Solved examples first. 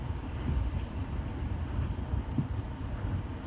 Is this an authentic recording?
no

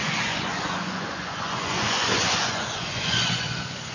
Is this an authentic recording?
no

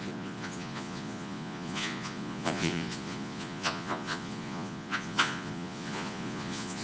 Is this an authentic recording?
no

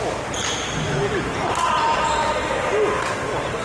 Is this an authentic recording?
no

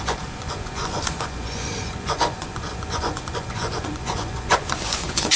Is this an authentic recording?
no